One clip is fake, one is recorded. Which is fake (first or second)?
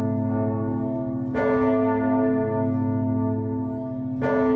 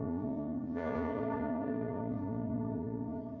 second